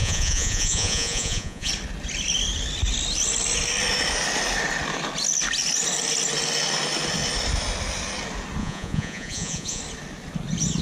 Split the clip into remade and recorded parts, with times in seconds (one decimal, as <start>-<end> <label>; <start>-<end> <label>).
0.0-1.7 remade; 1.7-8.6 recorded; 8.6-9.8 remade; 9.8-10.8 recorded